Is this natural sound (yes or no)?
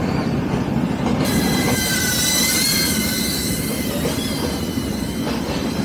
no